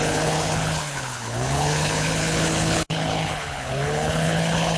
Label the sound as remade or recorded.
remade